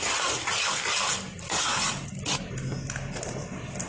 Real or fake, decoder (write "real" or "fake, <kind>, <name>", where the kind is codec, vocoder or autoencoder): real